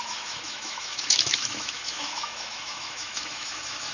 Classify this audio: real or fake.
fake